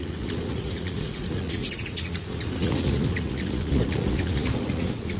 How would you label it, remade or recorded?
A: remade